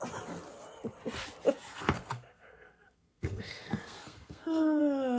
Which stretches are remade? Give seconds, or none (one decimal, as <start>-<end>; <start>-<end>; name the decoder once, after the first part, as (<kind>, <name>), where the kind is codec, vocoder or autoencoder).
1.7-4.8 (codec, SNAC)